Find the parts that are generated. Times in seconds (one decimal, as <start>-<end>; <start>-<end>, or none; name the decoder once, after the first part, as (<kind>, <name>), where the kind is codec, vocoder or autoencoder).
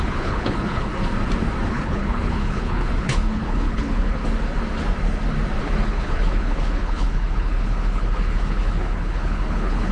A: 0.0-0.9 (codec, HILCodec); 1.7-4.2; 5.6-9.9